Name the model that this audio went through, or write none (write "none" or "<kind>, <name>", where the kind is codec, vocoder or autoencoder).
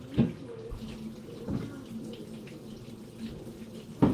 none